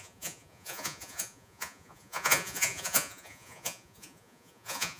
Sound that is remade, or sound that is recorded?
remade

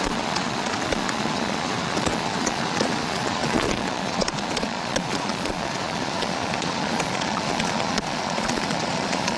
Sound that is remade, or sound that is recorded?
remade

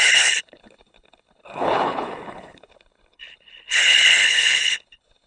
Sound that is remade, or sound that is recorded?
remade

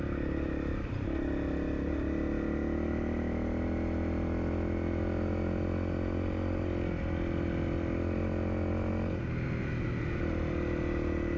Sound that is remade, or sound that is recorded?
recorded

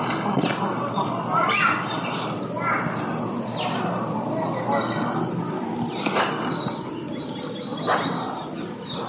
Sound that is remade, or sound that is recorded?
remade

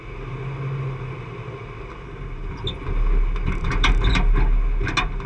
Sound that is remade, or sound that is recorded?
recorded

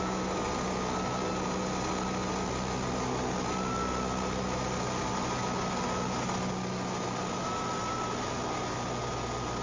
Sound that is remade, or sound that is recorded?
recorded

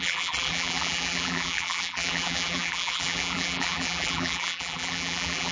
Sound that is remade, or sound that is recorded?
remade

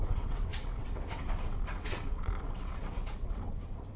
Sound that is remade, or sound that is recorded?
remade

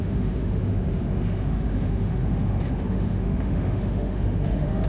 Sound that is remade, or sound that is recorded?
remade